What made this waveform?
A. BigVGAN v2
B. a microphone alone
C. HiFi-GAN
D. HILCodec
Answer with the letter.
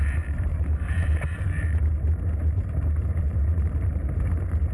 A